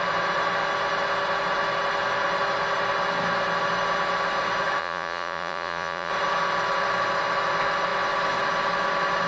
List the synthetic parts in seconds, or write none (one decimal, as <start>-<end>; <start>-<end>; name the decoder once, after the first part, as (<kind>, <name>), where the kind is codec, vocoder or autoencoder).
4.8-6.1 (vocoder, Vocos)

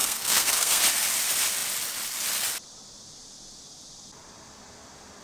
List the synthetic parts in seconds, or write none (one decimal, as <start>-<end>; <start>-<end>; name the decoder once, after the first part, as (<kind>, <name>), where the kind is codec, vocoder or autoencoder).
0.0-0.8 (codec, SNAC)

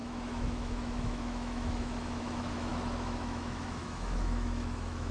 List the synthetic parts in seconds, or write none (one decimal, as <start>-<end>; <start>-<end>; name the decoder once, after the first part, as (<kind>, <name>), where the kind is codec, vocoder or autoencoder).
0.0-5.1 (autoencoder, DAC-VAE)

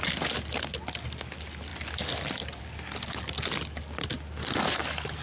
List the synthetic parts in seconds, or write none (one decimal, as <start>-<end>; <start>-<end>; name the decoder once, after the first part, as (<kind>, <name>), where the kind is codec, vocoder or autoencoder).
none

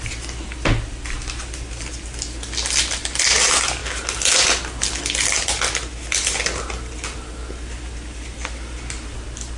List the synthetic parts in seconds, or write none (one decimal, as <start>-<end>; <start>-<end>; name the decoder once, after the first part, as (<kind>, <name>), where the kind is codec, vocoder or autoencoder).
none

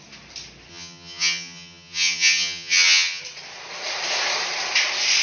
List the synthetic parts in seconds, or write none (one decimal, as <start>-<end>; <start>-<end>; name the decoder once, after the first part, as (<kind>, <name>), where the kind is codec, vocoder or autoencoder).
0.7-3.2 (vocoder, HiFi-GAN)